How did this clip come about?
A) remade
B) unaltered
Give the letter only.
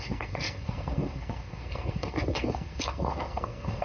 A